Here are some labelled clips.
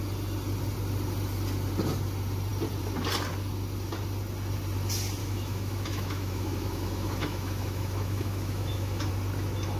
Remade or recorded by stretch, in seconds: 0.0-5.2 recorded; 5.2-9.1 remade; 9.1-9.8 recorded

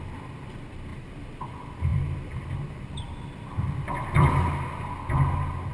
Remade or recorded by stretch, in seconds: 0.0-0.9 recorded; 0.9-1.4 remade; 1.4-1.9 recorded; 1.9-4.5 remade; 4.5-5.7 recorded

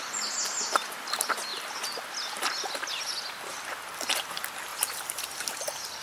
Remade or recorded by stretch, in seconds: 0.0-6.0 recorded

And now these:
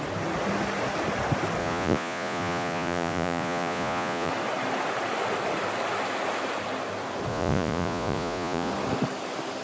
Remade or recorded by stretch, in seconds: 0.0-1.6 recorded; 1.6-4.3 remade; 4.3-7.3 recorded; 7.3-8.7 remade; 8.7-9.6 recorded